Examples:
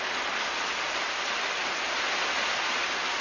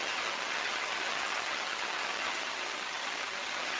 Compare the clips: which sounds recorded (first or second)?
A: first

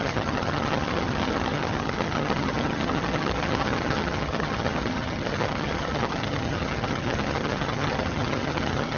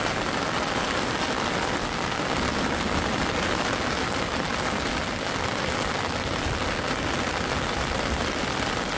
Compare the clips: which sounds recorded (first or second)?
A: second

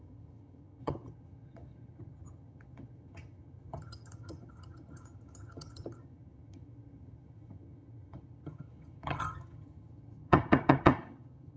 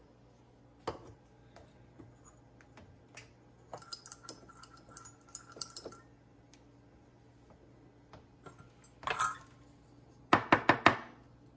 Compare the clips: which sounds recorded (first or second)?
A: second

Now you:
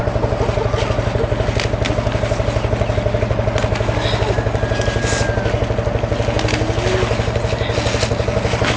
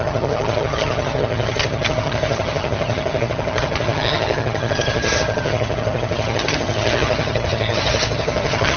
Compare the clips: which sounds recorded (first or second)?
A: first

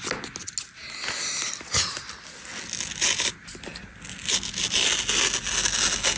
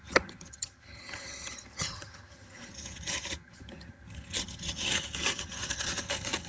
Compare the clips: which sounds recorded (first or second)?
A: first